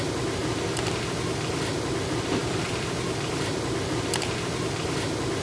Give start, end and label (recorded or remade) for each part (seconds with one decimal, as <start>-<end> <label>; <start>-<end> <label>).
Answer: 0.0-0.4 remade; 0.4-1.9 recorded; 1.9-5.4 remade